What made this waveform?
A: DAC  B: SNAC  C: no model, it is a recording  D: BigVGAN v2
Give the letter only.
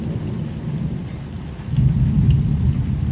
C